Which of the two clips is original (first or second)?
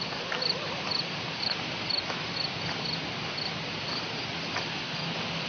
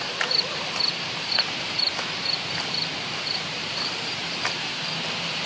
first